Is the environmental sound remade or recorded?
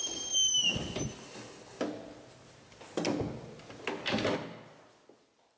recorded